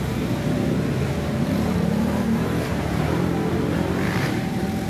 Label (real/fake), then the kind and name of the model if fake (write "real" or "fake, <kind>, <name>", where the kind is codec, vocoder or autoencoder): fake, vocoder, BigVGAN v2